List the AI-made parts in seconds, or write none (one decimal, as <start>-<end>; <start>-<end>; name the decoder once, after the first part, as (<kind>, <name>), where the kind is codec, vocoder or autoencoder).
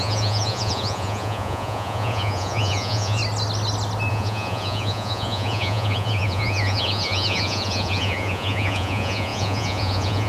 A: 0.0-3.2 (vocoder, Vocos); 4.1-10.3